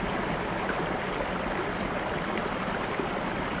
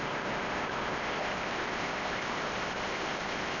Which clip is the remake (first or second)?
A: second